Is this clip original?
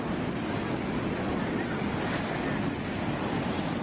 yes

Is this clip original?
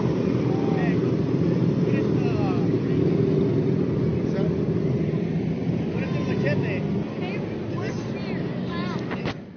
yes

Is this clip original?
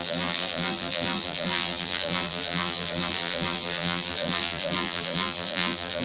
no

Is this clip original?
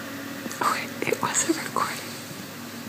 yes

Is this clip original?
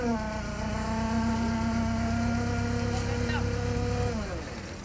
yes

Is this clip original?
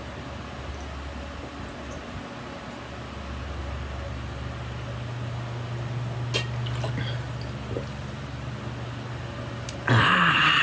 yes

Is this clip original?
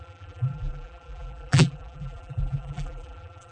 no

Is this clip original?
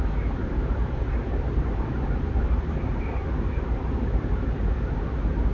no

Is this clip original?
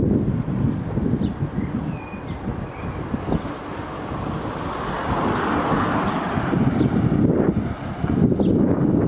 yes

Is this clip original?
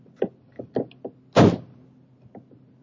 yes